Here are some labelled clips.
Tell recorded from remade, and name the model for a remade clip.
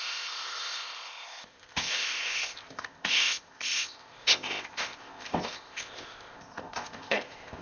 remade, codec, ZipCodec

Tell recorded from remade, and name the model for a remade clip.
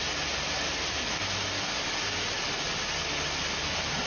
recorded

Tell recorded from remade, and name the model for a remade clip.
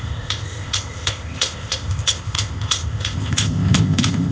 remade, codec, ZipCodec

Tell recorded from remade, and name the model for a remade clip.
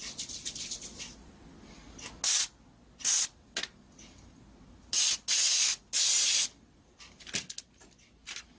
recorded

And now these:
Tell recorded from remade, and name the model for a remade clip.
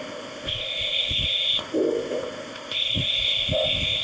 remade, codec, ZipCodec